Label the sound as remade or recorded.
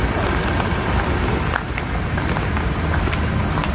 recorded